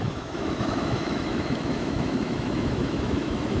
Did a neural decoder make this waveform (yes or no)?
yes